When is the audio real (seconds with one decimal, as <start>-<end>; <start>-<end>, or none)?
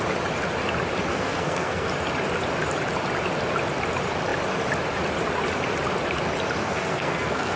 0.0-1.1; 1.9-6.6